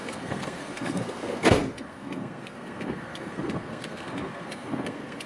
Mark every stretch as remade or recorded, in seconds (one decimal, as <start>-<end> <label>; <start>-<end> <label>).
0.0-5.3 remade